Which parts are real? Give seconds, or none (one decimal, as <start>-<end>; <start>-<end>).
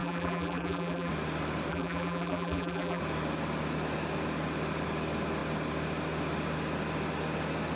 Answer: 1.1-1.7; 3.0-7.8